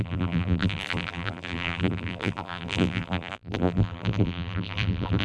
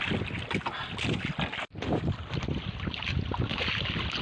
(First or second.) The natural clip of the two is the second